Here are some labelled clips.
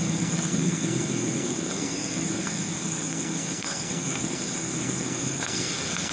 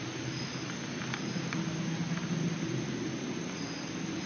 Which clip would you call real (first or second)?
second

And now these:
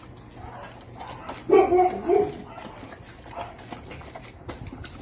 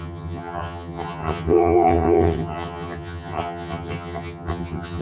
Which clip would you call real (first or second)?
first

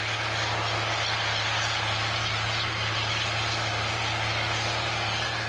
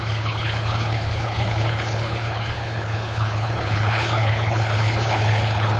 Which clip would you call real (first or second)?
first